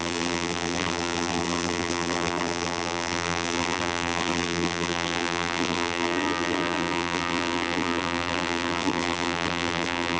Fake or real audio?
fake